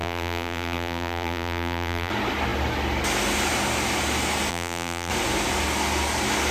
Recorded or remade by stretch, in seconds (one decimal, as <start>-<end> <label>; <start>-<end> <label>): 0.0-2.1 remade; 2.1-4.5 recorded; 4.5-5.1 remade; 5.1-6.5 recorded